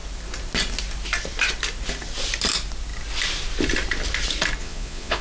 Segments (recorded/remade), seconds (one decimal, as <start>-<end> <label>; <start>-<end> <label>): 0.0-4.6 recorded; 4.6-5.2 remade